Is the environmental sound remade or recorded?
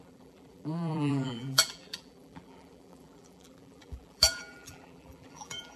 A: remade